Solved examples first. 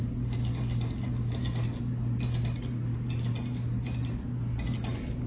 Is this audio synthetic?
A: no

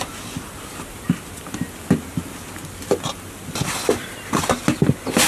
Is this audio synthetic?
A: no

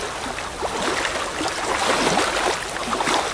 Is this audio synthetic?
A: no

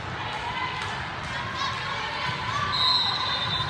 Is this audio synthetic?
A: no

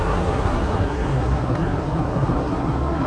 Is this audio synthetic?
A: yes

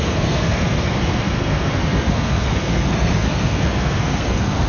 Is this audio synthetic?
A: yes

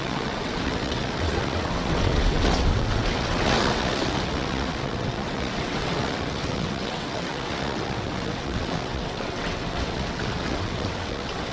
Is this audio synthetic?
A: yes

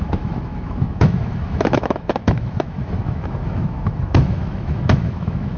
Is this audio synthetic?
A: yes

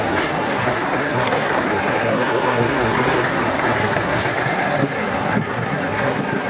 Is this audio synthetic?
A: yes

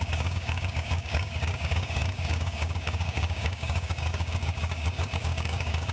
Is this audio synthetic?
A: yes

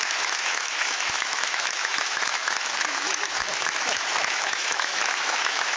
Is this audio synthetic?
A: yes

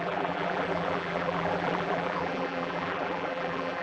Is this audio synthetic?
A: yes